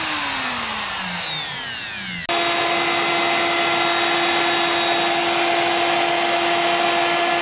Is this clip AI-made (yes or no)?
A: no